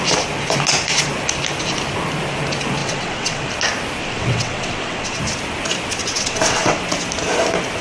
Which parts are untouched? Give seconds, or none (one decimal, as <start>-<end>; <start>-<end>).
0.0-2.8; 3.5-4.0; 5.2-6.0; 6.8-7.8